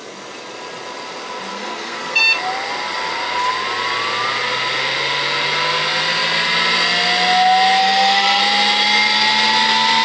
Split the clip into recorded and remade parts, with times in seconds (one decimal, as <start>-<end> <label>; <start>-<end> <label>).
0.0-1.5 recorded; 1.5-2.2 remade; 2.2-7.8 recorded; 7.8-8.4 remade; 8.4-10.0 recorded